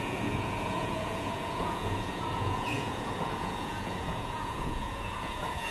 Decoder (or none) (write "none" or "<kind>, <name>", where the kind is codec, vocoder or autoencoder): vocoder, Vocos